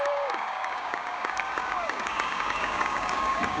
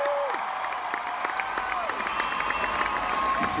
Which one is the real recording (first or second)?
second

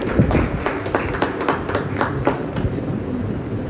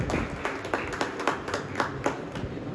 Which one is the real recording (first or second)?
second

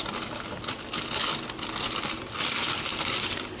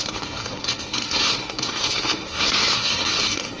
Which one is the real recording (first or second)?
first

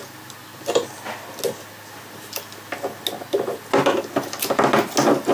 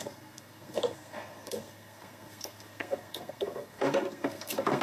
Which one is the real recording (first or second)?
first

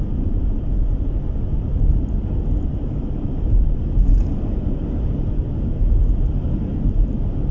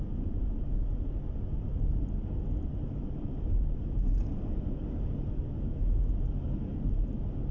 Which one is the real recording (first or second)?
second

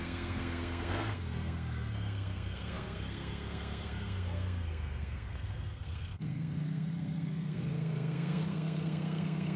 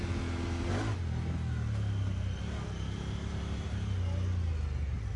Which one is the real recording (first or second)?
second